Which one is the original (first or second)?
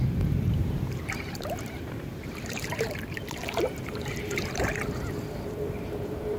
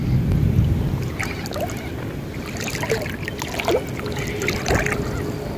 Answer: second